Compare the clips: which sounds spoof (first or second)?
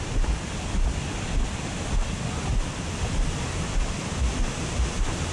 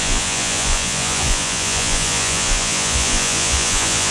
second